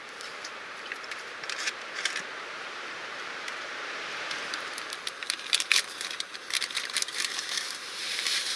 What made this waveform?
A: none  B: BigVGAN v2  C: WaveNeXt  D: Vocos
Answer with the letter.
B